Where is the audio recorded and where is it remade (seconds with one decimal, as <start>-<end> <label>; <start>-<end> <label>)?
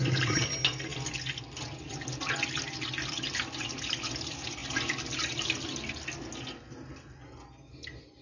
0.0-8.2 recorded